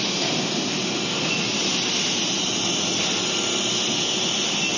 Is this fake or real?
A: real